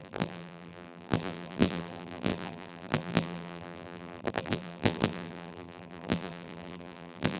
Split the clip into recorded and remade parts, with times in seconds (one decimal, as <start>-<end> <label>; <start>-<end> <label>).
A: 0.0-7.4 remade